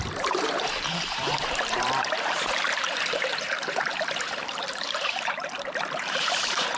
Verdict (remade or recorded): remade